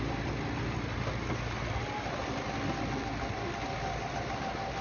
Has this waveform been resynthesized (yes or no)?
no